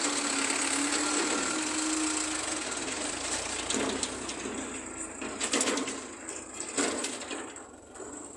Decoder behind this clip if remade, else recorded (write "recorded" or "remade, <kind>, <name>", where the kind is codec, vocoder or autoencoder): recorded